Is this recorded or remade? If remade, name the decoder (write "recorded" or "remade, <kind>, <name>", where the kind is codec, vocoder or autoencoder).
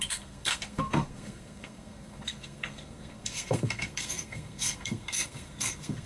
remade, codec, SNAC